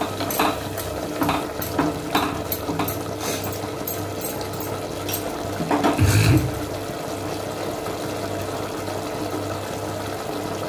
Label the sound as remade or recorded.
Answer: recorded